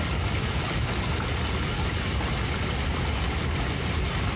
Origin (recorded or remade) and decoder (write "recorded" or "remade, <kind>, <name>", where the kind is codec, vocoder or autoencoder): recorded